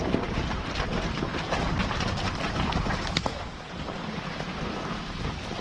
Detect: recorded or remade remade